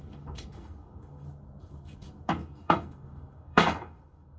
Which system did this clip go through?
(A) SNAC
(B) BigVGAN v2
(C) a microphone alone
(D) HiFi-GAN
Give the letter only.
A